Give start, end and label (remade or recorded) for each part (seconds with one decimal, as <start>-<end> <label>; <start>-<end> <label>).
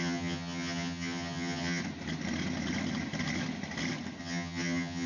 0.0-1.8 remade; 1.8-4.2 recorded; 4.2-5.1 remade